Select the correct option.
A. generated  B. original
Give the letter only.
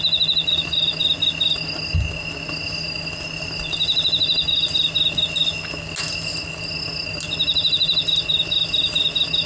B